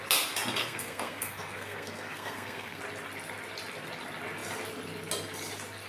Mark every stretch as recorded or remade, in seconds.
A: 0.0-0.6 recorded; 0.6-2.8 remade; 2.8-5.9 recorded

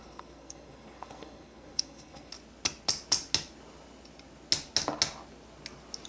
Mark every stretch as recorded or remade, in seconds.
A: 0.0-2.3 remade; 2.3-6.1 recorded

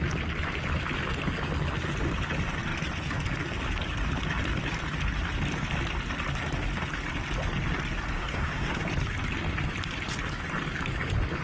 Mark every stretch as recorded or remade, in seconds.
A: 0.0-8.1 recorded; 8.1-8.8 remade; 8.8-11.4 recorded

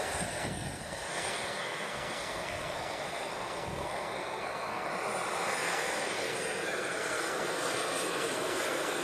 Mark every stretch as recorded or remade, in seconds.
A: 0.0-4.9 remade; 4.9-5.6 recorded; 5.6-9.0 remade

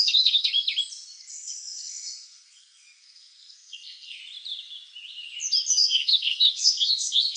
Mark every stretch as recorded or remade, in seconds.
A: 0.0-0.5 remade; 0.5-1.3 recorded; 1.3-4.2 remade; 4.2-5.7 recorded; 5.7-7.4 remade

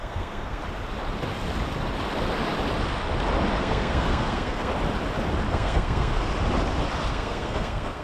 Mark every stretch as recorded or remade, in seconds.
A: 0.0-0.6 remade; 0.6-3.6 recorded; 3.6-4.7 remade; 4.7-5.5 recorded; 5.5-6.3 remade; 6.3-7.1 recorded; 7.1-8.0 remade

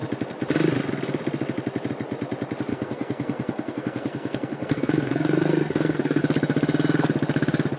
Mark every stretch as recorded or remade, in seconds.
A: 0.0-2.7 recorded; 2.7-6.2 remade; 6.2-7.8 recorded